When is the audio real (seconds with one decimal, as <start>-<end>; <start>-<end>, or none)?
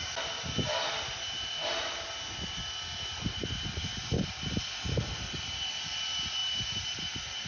0.0-7.5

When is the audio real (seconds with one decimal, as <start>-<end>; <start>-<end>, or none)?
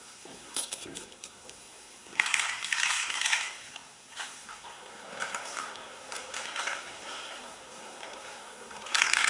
none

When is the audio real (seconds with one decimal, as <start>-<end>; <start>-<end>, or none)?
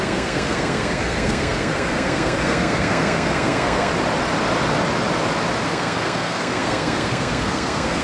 3.9-5.7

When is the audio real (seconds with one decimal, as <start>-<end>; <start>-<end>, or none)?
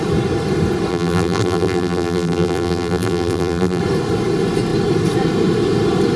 0.0-0.9; 3.8-6.2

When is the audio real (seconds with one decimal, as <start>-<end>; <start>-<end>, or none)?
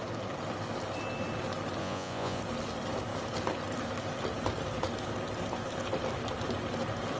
0.0-1.8; 2.4-7.2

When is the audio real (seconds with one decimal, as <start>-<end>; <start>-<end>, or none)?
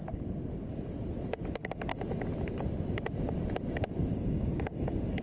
0.0-1.5; 1.9-4.1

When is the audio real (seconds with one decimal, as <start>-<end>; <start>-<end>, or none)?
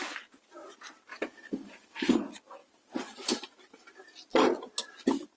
0.0-1.1; 2.1-2.6; 4.0-5.4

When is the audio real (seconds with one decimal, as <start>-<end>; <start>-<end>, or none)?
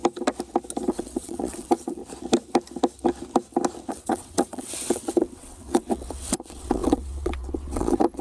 0.0-0.9; 2.0-3.9